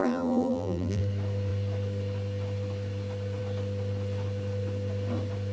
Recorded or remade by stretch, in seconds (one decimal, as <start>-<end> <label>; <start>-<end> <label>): 0.0-1.0 remade; 1.0-5.5 recorded

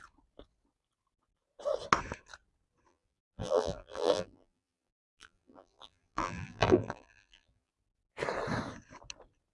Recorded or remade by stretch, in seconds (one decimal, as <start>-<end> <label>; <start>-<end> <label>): 0.0-2.9 recorded; 2.9-7.7 remade; 7.7-9.5 recorded

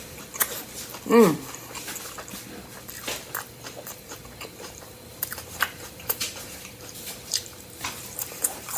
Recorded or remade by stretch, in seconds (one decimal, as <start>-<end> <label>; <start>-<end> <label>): 0.0-0.9 remade; 0.9-4.5 recorded; 4.5-8.8 remade

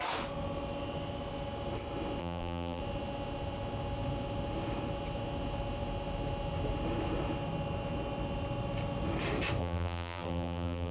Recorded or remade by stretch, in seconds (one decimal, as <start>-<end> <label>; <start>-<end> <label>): 0.0-2.2 recorded; 2.2-2.8 remade; 2.8-9.6 recorded; 9.6-10.9 remade